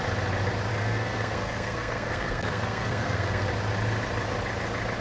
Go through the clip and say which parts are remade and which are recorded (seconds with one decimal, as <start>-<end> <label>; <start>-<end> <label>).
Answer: 0.0-0.7 recorded; 0.7-3.5 remade; 3.5-5.0 recorded